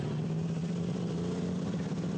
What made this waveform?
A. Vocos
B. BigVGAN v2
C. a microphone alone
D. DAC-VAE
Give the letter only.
B